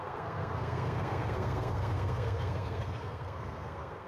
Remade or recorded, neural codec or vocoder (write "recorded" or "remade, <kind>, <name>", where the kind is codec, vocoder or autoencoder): remade, codec, SNAC